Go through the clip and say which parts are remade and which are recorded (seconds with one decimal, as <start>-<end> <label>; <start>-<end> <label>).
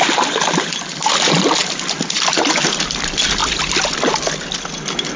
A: 0.0-5.2 recorded